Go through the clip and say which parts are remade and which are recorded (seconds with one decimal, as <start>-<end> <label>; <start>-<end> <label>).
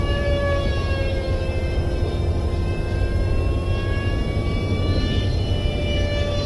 0.0-6.5 recorded